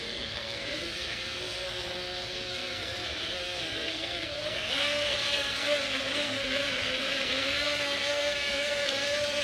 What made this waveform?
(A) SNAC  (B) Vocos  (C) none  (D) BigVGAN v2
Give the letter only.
A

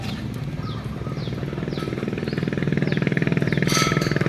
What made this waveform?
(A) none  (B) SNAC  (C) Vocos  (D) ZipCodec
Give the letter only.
A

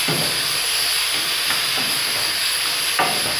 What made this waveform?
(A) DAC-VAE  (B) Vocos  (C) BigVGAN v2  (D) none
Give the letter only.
D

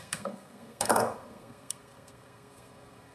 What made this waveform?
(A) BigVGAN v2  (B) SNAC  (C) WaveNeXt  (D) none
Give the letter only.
B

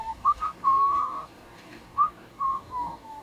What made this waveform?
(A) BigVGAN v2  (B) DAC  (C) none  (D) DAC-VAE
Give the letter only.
B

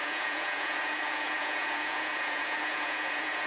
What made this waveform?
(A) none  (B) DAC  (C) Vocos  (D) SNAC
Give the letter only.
C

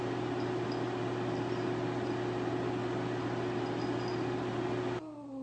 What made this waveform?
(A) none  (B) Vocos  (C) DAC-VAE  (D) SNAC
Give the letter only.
A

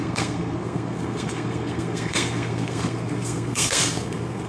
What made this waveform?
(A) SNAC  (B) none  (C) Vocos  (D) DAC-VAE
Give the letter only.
A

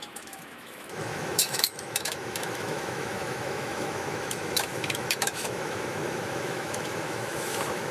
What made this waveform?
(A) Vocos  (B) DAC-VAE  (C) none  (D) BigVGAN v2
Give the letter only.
B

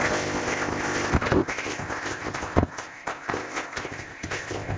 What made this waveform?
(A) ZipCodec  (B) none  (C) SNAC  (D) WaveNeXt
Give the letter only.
A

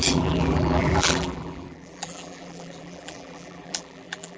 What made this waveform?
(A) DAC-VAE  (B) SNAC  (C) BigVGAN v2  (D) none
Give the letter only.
C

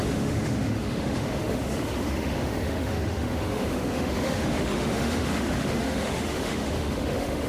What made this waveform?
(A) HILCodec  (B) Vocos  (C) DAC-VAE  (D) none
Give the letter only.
C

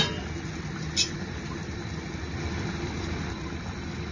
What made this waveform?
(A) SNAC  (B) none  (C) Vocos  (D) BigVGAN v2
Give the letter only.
B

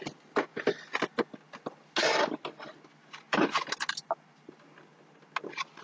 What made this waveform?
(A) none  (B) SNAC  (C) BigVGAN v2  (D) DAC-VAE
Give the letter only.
A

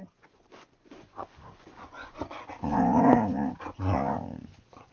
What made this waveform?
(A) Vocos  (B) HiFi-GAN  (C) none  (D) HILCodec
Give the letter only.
A